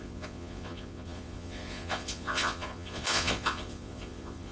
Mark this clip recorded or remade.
remade